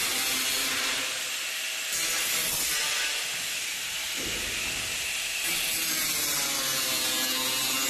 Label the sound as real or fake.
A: real